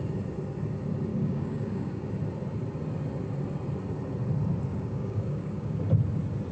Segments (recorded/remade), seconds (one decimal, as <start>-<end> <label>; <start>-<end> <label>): 0.0-1.1 recorded; 1.1-2.1 remade; 2.1-4.7 recorded; 4.7-5.8 remade; 5.8-6.5 recorded